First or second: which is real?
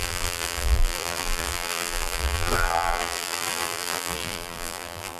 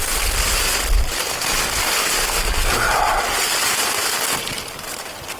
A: second